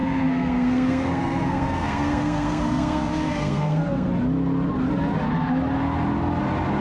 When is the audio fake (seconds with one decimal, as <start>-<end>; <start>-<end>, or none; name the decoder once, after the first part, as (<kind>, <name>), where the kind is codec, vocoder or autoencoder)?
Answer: 0.0-4.1 (codec, SNAC)